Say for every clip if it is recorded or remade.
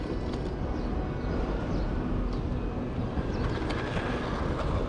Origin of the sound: recorded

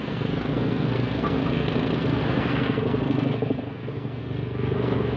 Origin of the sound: remade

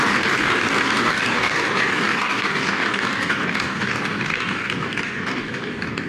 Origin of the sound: remade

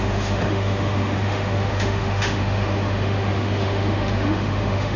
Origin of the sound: remade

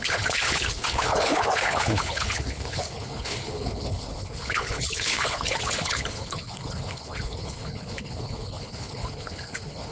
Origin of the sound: remade